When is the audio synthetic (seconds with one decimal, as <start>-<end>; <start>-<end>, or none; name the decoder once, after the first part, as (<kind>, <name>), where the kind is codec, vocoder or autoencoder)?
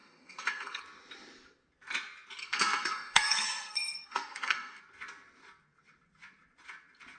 0.0-0.8 (codec, SNAC); 2.4-4.8